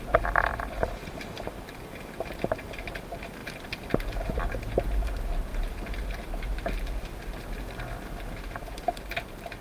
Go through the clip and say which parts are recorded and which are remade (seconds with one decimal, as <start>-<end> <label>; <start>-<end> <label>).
0.0-0.5 recorded; 0.5-1.3 remade; 1.3-5.5 recorded; 5.5-6.8 remade; 6.8-9.6 recorded